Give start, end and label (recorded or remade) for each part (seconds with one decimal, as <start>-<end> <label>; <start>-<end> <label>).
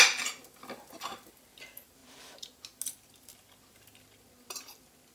0.0-5.1 recorded